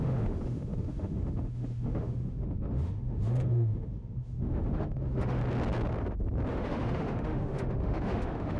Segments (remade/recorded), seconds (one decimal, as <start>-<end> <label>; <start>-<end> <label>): 0.0-5.4 remade; 5.4-6.5 recorded; 6.5-8.6 remade